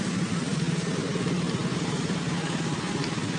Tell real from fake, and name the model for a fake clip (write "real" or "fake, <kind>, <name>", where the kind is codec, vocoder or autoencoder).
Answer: real